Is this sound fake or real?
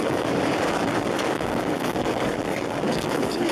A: fake